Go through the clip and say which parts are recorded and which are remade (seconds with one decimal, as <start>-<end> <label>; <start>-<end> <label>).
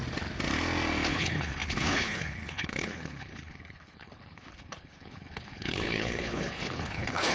0.0-1.1 recorded; 1.1-7.3 remade